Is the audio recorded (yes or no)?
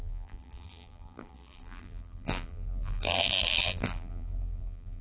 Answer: no